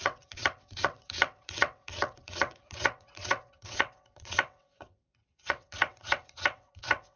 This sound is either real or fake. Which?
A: fake